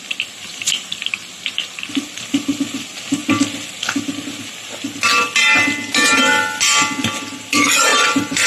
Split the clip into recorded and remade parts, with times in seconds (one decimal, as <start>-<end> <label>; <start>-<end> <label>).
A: 0.0-7.9 recorded; 7.9-8.5 remade